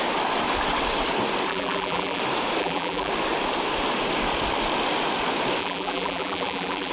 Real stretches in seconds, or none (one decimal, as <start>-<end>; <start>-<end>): 0.0-1.5; 2.2-2.6; 3.1-5.6